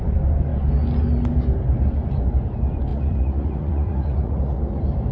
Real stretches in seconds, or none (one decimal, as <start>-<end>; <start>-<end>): 0.0-2.9; 4.6-5.1